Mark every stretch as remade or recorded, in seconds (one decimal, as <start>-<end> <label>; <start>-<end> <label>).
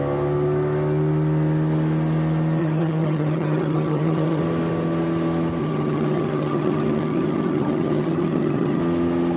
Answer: 0.0-2.6 recorded; 2.6-4.4 remade; 4.4-5.6 recorded; 5.6-8.8 remade; 8.8-9.4 recorded